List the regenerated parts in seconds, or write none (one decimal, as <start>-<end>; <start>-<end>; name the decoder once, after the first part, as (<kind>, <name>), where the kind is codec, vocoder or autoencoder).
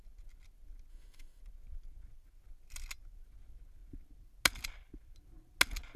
0.9-1.4 (autoencoder, DAC-VAE)